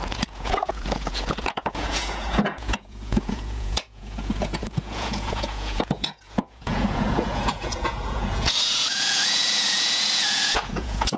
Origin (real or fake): fake